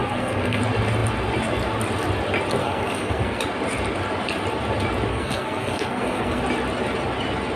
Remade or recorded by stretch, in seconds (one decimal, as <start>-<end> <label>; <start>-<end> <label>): 0.0-0.6 remade; 0.6-2.6 recorded; 2.6-3.4 remade; 3.4-5.1 recorded; 5.1-6.4 remade; 6.4-7.6 recorded

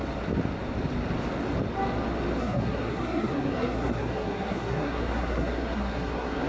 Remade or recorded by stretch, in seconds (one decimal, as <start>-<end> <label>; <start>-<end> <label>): 0.0-2.4 recorded; 2.4-6.5 remade

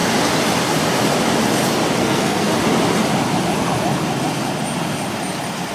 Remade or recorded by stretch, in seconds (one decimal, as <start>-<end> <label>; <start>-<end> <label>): 0.0-2.0 recorded; 2.0-2.5 remade; 2.5-5.7 recorded

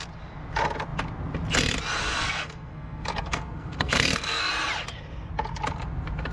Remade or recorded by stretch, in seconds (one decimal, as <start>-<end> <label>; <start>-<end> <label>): 0.0-2.0 recorded; 2.0-4.5 remade; 4.5-6.3 recorded

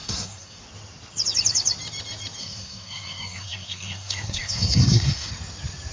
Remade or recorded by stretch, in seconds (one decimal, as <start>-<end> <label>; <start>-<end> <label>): 0.0-0.6 remade; 0.6-2.4 recorded; 2.4-5.3 remade; 5.3-5.9 recorded